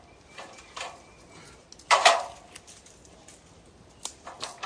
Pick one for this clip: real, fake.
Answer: real